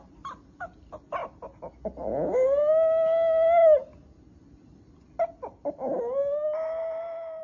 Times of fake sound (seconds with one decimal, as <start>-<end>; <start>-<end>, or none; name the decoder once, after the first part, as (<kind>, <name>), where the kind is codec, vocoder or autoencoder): 1.2-1.7 (vocoder, BigVGAN v2)